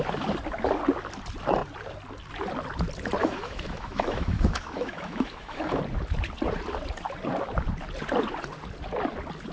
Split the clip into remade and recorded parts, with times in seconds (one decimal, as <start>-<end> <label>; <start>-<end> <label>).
0.0-3.2 recorded; 3.2-5.8 remade; 5.8-9.5 recorded